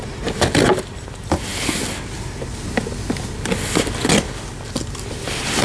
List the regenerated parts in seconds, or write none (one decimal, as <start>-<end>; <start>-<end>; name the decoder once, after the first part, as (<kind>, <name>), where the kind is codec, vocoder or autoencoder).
none